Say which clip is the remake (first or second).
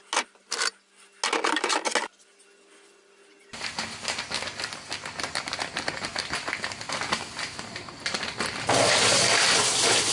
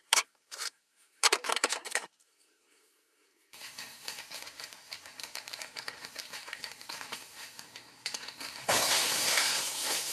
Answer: second